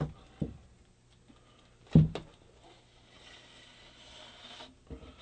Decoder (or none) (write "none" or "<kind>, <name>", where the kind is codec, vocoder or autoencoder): none